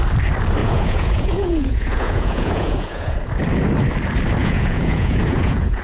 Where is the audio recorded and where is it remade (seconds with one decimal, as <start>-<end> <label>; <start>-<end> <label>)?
0.0-0.6 recorded; 0.6-3.3 remade; 3.3-4.4 recorded; 4.4-5.8 remade